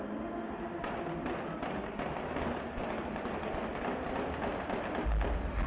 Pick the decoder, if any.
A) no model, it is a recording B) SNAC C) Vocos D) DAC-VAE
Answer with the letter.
A